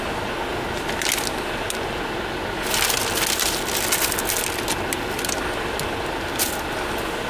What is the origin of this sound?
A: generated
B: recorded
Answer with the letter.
B